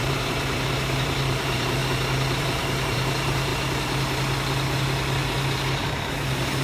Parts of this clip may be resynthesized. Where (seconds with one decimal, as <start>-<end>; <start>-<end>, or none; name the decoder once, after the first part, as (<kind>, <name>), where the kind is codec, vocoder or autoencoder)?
0.0-1.8 (vocoder, BigVGAN v2); 2.4-3.5; 6.1-6.6

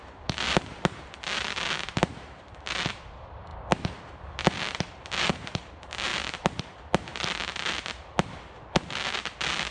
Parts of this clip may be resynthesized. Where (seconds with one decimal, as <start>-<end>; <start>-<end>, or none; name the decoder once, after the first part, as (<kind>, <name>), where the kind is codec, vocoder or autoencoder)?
none

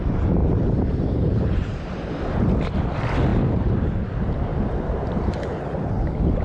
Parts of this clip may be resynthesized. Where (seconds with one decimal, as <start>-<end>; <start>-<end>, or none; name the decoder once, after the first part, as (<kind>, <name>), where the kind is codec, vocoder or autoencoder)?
0.4-2.2 (vocoder, BigVGAN v2); 3.3-3.9; 4.5-5.9

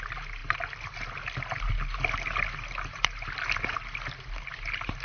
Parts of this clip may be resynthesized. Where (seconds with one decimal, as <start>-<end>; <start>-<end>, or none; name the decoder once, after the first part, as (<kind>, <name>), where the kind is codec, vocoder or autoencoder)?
none

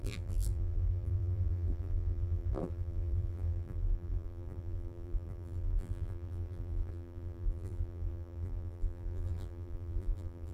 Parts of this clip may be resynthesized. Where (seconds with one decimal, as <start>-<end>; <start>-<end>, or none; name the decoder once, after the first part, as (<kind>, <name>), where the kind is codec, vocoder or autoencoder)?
0.0-10.5 (vocoder, BigVGAN v2)

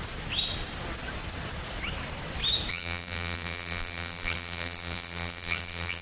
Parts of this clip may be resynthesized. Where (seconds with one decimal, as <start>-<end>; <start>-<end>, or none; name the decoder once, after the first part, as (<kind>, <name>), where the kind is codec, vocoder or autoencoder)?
2.7-6.0 (vocoder, BigVGAN v2)

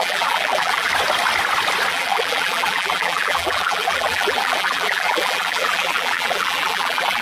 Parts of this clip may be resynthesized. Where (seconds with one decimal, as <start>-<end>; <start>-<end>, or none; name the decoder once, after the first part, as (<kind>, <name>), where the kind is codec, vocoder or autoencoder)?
0.0-0.9 (vocoder, BigVGAN v2); 1.9-7.2

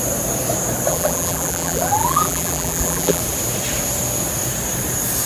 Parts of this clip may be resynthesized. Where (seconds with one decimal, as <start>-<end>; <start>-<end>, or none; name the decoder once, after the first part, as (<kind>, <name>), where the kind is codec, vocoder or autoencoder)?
0.9-3.2 (vocoder, BigVGAN v2)